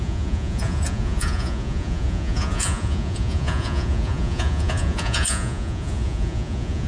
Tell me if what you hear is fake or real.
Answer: fake